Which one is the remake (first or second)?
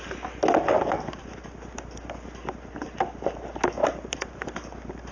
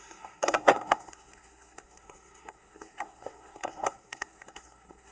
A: second